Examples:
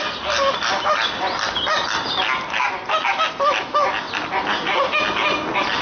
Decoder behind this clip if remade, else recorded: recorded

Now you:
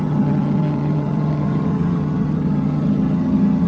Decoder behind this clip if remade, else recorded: remade, vocoder, HiFi-GAN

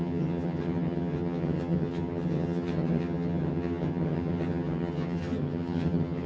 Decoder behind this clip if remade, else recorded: remade, vocoder, HiFi-GAN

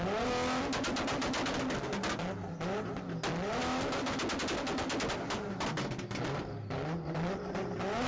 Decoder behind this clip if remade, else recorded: recorded